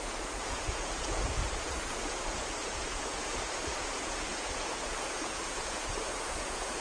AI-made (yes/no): yes